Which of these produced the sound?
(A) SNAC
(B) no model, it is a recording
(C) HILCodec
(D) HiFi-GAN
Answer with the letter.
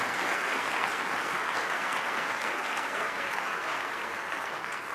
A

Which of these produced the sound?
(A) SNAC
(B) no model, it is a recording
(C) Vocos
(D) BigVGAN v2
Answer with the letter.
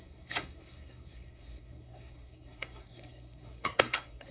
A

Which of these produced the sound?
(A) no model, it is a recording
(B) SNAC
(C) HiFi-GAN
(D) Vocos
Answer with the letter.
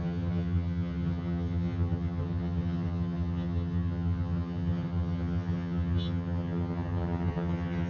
C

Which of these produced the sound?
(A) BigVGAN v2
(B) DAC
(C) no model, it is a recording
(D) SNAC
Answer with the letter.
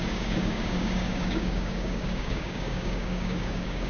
B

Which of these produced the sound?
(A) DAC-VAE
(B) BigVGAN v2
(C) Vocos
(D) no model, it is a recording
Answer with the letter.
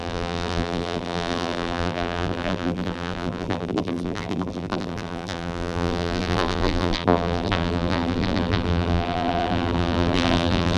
B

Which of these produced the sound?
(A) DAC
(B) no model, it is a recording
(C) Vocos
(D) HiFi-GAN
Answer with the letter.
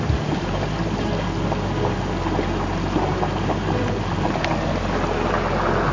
B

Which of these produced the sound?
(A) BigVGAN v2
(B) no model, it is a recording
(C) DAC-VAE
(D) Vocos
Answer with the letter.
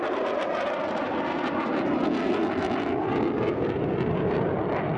B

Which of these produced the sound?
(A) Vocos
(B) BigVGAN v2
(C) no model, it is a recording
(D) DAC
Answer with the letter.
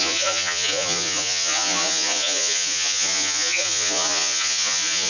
A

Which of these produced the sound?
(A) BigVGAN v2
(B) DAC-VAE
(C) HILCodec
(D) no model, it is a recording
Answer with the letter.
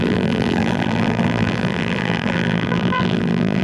A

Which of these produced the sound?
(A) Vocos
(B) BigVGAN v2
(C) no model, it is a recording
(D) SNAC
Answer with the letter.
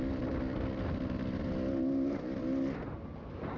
C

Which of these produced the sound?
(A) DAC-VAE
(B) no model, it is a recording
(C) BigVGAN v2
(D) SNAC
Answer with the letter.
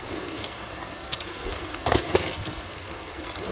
D